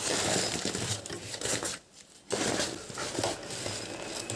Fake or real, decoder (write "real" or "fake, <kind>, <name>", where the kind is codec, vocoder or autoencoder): real